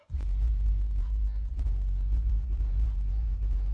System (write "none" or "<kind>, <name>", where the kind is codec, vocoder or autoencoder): vocoder, Vocos